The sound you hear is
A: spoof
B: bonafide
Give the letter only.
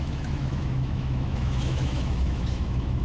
A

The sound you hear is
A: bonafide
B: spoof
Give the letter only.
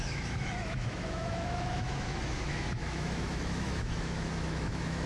B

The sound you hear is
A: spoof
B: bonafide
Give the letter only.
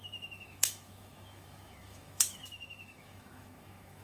A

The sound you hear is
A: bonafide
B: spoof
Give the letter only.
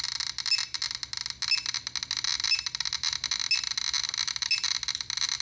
A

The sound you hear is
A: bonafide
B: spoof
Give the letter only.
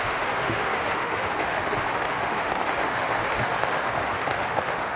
B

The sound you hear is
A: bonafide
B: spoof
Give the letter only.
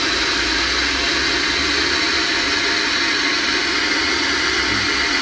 A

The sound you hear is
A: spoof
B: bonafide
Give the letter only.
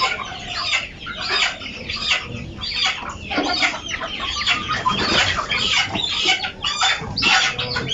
B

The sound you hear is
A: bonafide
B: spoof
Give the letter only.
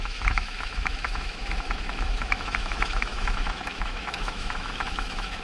B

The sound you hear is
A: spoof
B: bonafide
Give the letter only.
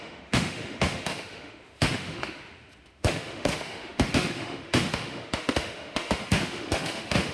A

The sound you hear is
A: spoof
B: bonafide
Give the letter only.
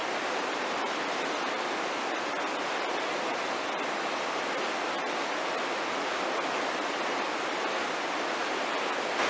B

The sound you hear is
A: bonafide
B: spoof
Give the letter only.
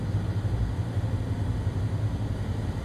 A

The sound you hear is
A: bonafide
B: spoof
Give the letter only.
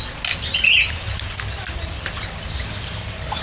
A